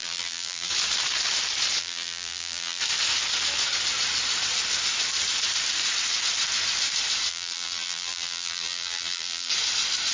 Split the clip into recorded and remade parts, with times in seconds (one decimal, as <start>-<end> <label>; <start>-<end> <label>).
0.0-0.7 remade; 0.7-1.8 recorded; 1.8-2.8 remade; 2.8-7.3 recorded; 7.3-9.5 remade; 9.5-10.1 recorded